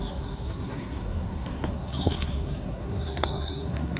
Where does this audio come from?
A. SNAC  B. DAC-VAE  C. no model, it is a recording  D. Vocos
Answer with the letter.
A